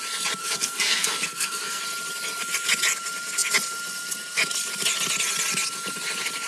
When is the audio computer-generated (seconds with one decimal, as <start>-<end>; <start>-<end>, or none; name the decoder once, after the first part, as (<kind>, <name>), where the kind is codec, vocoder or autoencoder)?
0.4-1.8 (codec, SNAC)

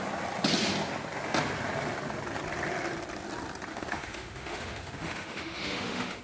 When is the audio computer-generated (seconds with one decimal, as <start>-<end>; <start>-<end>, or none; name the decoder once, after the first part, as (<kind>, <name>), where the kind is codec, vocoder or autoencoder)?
3.7-6.2 (autoencoder, DAC-VAE)

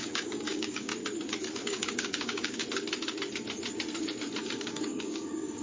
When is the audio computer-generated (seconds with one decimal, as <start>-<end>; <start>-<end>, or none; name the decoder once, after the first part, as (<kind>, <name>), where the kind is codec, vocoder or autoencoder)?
0.0-0.9 (codec, DAC); 1.6-2.6; 4.4-5.6

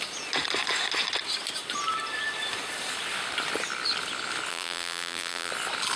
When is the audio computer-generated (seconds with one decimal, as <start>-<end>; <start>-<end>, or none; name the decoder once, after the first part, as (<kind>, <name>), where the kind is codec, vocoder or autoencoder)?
4.5-5.5 (vocoder, BigVGAN v2)

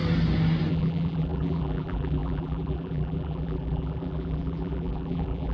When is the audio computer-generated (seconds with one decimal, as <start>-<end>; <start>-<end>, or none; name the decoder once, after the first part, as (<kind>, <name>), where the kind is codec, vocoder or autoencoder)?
0.7-5.5 (vocoder, BigVGAN v2)

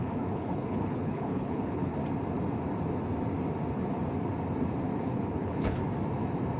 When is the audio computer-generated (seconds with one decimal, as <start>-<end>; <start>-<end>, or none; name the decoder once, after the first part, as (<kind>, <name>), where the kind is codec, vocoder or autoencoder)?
0.0-1.9 (codec, HILCodec); 5.0-5.8